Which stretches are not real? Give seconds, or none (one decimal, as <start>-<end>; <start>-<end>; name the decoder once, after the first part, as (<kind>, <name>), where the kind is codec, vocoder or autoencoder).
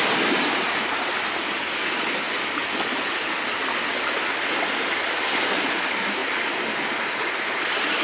0.0-2.6 (vocoder, BigVGAN v2); 5.8-6.2; 7.0-8.0